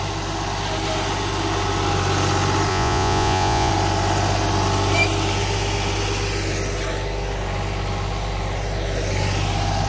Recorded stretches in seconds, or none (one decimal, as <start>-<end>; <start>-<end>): 0.0-2.7; 3.7-9.9